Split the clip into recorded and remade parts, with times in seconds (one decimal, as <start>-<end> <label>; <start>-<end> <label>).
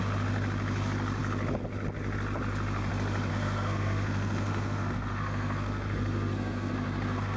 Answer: 0.0-3.3 recorded; 3.3-7.4 remade